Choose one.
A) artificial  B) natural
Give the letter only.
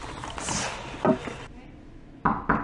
B